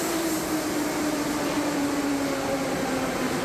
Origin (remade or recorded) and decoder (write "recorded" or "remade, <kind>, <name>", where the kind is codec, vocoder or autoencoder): recorded